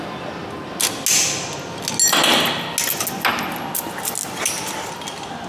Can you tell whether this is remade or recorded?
recorded